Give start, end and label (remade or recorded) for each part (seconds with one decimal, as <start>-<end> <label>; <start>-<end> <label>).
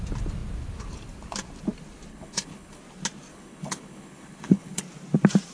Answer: 0.0-2.1 recorded; 2.1-2.8 remade; 2.8-3.3 recorded; 3.3-4.8 remade; 4.8-5.5 recorded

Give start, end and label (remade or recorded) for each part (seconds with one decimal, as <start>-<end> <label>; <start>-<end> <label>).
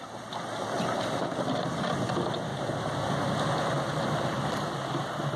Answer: 0.0-5.4 recorded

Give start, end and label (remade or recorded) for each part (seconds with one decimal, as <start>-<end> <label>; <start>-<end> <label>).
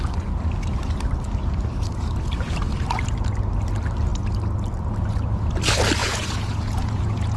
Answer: 0.0-6.0 recorded; 6.0-7.4 remade